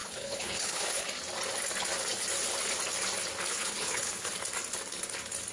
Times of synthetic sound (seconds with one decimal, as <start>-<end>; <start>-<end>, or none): 0.0-1.1; 3.5-4.3